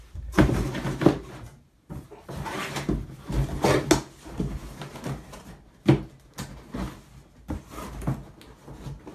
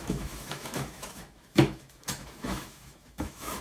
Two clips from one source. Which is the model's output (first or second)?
second